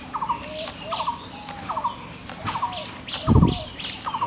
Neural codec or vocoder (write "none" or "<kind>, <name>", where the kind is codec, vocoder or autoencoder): none